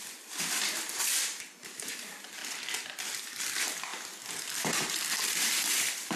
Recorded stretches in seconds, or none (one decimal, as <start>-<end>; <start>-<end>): 2.4-3.2

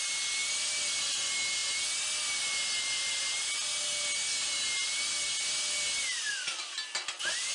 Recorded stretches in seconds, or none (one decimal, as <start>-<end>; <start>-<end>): 0.0-7.5

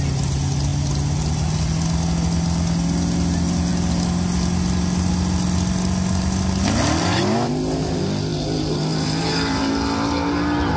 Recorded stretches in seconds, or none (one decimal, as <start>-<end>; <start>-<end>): 0.0-8.3; 9.7-10.8

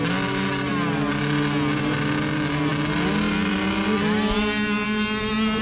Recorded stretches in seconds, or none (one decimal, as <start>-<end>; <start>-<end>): 0.0-5.6

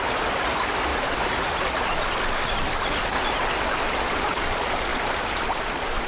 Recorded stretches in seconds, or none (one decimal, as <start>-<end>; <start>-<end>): 0.9-4.1